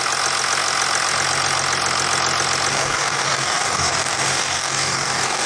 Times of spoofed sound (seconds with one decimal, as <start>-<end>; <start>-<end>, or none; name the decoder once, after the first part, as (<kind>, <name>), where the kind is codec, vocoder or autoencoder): 2.7-5.5 (codec, DAC)